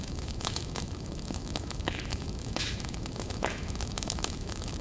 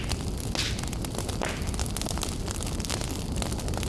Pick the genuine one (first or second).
second